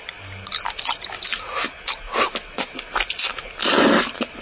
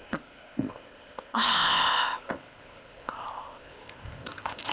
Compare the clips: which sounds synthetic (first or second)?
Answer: second